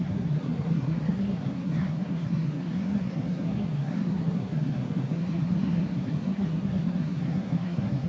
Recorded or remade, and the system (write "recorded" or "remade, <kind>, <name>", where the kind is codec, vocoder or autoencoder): remade, codec, SNAC